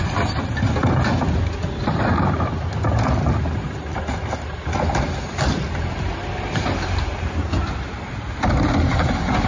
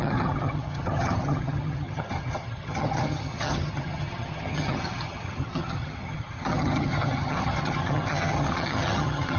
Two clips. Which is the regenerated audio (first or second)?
second